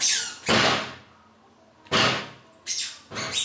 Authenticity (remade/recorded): recorded